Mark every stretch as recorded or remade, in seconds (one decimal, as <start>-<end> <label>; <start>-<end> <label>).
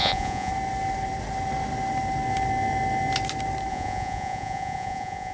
0.0-0.5 remade; 0.5-3.7 recorded; 3.7-5.3 remade